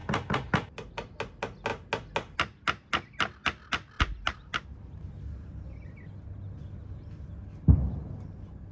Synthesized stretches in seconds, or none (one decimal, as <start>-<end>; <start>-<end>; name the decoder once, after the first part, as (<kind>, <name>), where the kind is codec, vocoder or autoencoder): none